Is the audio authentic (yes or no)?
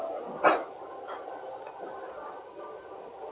yes